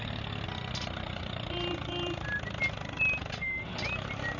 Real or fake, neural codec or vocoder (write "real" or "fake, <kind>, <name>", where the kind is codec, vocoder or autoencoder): real